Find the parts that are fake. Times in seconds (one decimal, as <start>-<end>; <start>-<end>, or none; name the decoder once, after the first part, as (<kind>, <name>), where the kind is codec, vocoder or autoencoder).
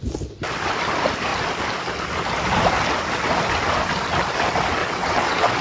4.8-5.6 (vocoder, WaveNeXt)